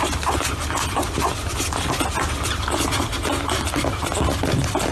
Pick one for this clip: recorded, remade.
recorded